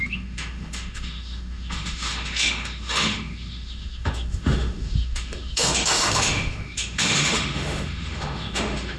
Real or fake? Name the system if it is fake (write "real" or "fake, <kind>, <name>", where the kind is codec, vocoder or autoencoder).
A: fake, autoencoder, DAC-VAE